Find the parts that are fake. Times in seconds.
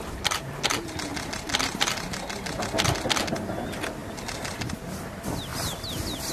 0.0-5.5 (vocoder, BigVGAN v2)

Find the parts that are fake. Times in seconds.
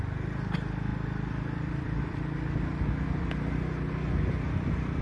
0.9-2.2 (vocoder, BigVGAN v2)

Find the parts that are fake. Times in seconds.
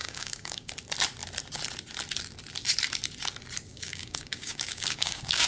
0.0-0.7 (codec, DAC); 3.7-5.5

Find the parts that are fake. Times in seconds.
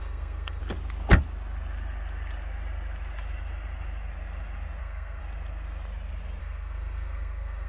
0.0-0.6 (codec, SNAC); 4.8-5.2; 6.4-7.7